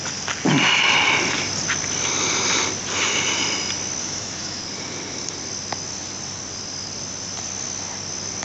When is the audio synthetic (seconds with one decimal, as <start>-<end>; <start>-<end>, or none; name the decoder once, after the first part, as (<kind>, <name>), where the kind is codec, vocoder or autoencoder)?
4.0-4.6 (autoencoder, DAC-VAE)